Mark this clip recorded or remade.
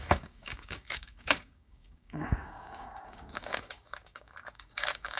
remade